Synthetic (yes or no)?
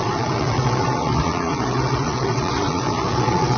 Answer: yes